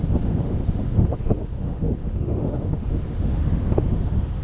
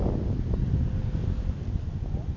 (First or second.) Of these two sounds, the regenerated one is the first